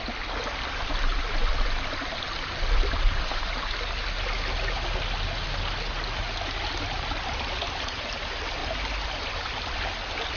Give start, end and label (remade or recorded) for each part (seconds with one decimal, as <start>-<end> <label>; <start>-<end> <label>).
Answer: 0.0-10.4 recorded